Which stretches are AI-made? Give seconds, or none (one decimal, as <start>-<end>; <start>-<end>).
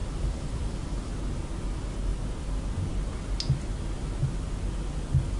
0.0-1.1